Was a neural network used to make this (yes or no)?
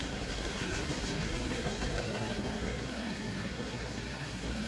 yes